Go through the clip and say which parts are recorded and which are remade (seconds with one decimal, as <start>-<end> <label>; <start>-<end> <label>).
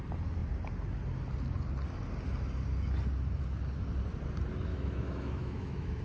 0.0-4.7 recorded; 4.7-6.0 remade